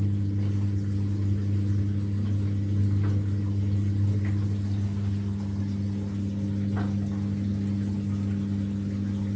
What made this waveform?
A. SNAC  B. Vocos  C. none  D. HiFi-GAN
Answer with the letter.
C